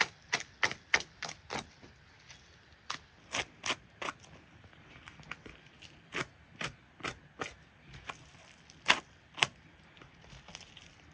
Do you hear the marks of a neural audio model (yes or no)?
no